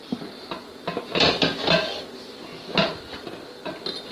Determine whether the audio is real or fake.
real